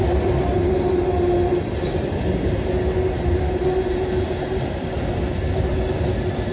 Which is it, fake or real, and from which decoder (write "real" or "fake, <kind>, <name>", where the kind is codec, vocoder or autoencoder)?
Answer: real